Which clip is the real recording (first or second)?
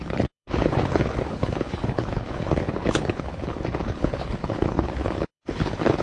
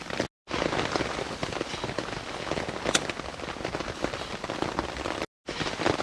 second